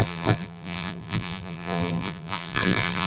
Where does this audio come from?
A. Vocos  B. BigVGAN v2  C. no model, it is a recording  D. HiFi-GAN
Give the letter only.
B